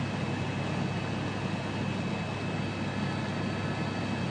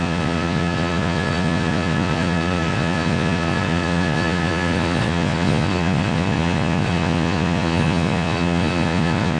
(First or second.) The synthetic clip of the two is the second